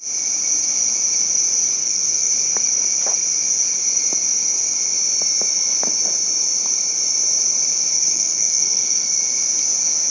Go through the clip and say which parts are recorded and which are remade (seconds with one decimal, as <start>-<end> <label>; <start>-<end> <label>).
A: 0.0-1.8 recorded; 1.8-2.3 remade; 2.3-7.9 recorded; 7.9-9.2 remade; 9.2-10.1 recorded